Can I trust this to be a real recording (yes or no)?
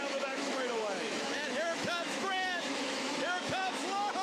no